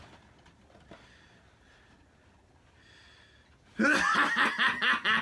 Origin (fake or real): real